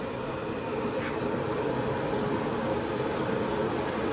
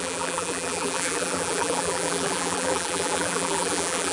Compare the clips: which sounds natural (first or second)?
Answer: first